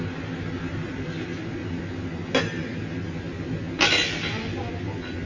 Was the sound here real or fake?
real